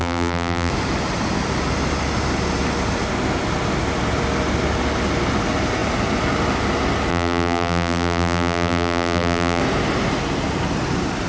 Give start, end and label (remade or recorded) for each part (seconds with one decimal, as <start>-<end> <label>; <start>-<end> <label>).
0.0-0.7 remade; 0.7-7.1 recorded; 7.1-9.6 remade; 9.6-11.3 recorded